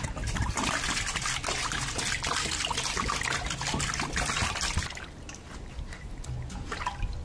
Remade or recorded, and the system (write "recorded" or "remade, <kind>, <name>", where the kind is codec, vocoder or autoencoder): recorded